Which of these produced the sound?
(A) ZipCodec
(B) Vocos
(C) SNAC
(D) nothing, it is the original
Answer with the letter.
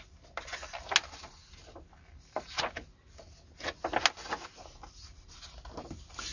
D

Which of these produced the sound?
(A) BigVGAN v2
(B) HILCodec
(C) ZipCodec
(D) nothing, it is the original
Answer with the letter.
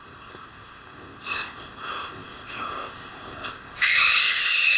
C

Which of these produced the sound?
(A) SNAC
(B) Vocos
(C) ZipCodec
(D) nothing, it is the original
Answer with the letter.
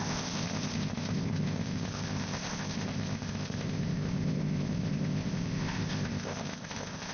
C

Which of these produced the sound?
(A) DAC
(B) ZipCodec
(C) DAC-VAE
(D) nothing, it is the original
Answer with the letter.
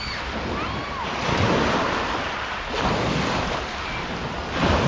D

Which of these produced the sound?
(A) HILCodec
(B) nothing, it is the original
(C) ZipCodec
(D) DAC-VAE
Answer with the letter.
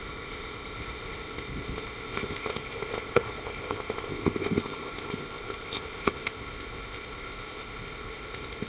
C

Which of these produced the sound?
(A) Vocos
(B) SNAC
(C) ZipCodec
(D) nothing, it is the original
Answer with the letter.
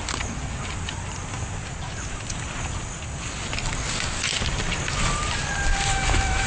D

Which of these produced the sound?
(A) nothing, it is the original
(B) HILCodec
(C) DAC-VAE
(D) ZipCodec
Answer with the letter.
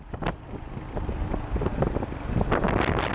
A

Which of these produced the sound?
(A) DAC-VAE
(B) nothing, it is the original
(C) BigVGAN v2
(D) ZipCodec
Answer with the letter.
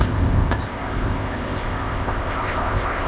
D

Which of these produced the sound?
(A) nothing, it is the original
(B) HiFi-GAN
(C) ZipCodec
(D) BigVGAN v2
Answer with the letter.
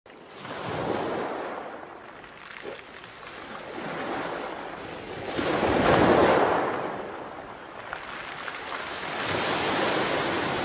A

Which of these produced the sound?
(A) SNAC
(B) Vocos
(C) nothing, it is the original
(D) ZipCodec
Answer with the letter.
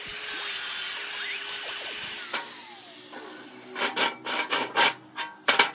C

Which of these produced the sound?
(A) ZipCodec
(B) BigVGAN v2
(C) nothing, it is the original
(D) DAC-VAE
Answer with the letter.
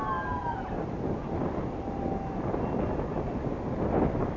C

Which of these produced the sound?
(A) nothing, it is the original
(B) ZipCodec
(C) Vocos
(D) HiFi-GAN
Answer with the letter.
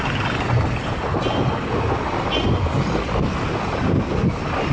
A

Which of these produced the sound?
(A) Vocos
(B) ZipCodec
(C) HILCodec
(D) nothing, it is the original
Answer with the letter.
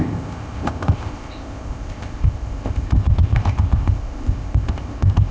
B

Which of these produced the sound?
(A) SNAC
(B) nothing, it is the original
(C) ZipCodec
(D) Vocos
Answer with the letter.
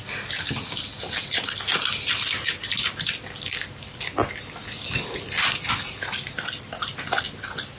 B